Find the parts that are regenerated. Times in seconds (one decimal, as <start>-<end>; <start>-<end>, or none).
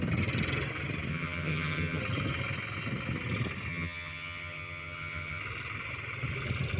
1.1-2.0; 3.7-5.4